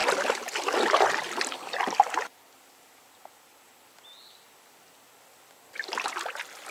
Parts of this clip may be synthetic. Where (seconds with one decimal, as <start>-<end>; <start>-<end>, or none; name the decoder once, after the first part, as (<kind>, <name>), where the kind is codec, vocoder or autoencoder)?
none